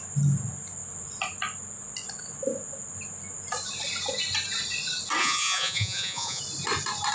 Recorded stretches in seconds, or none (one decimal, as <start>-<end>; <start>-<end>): 0.0-5.2; 6.4-7.1